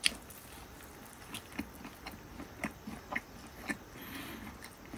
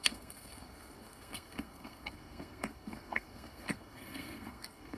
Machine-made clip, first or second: second